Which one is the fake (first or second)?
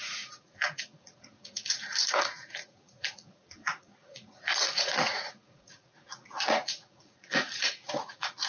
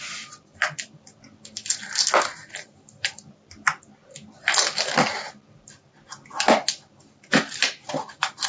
first